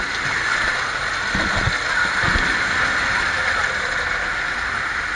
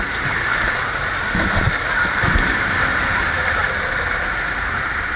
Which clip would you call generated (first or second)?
second